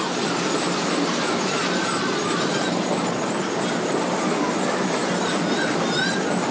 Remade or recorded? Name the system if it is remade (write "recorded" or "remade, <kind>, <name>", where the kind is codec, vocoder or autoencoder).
recorded